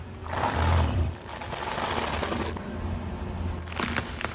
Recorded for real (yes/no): yes